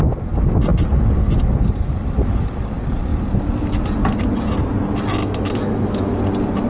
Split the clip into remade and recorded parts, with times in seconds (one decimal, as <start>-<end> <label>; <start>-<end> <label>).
0.0-5.2 recorded; 5.2-6.2 remade; 6.2-6.7 recorded